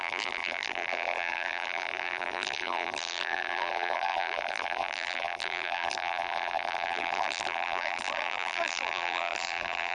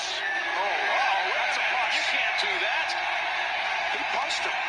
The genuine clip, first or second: second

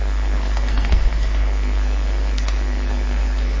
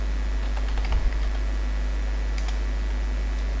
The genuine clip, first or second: second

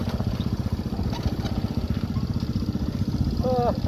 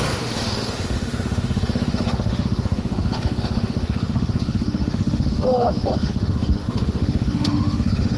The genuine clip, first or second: first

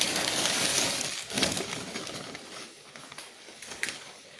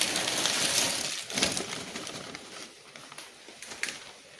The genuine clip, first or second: second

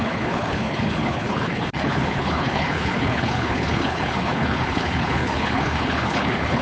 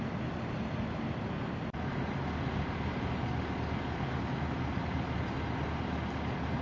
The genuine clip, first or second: second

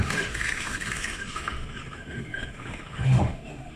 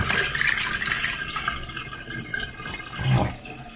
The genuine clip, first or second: second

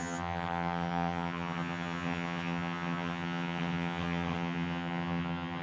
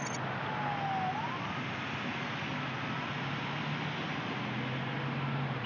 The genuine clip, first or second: second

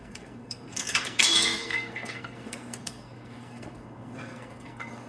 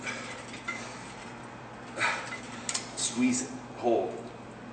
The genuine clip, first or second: second